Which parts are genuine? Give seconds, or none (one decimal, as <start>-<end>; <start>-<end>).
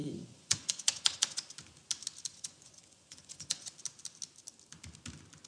1.5-2.3; 3.7-5.5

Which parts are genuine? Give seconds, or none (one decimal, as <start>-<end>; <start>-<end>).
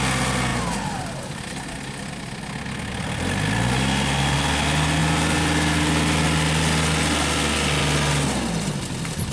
0.0-9.3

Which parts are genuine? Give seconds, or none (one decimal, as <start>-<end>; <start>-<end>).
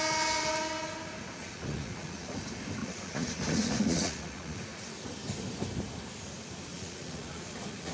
0.0-1.4; 2.4-2.8; 4.9-6.7